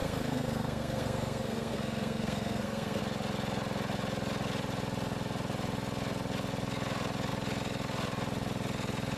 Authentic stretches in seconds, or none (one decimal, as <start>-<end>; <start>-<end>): 3.0-9.2